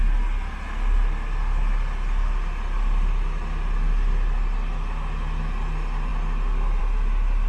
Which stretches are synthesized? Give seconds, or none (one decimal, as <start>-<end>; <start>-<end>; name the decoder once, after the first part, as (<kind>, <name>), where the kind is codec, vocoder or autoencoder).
none